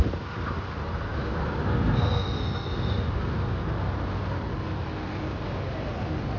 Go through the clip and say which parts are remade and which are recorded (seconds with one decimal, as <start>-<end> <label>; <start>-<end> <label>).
0.0-6.4 recorded